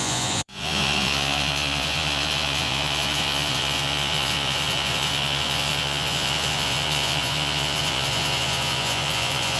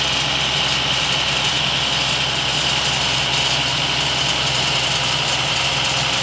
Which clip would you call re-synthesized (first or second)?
first